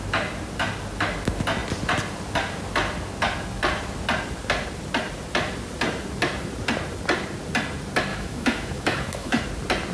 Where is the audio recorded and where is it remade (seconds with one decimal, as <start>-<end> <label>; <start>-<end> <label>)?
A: 0.0-8.1 recorded; 8.1-9.4 remade; 9.4-9.9 recorded